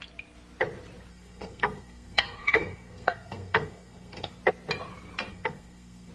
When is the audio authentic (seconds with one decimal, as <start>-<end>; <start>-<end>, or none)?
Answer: 0.0-1.1; 4.4-5.3

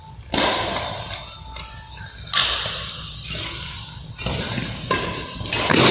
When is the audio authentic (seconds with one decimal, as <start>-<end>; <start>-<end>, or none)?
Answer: 0.0-5.9

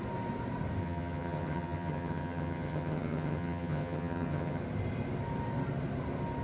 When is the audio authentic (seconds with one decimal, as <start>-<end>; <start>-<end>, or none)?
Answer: 0.0-0.8; 4.6-6.4